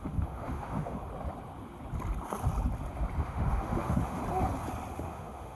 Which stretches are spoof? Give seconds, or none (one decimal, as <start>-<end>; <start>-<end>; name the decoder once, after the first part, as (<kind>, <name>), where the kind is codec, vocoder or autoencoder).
0.0-1.1 (autoencoder, DAC-VAE); 3.2-4.2; 4.9-5.6